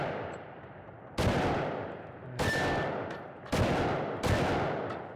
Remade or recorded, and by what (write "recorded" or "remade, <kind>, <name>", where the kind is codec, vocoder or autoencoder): recorded